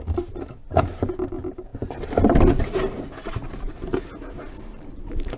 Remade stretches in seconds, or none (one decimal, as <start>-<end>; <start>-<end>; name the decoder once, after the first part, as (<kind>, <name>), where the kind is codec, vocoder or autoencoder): 0.0-5.4 (vocoder, BigVGAN v2)